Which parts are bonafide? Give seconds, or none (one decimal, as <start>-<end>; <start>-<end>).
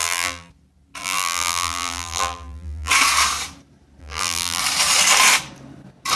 0.5-1.0; 2.9-4.0; 4.6-6.2